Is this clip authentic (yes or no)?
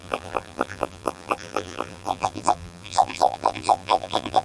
no